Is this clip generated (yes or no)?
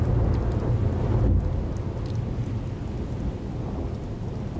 no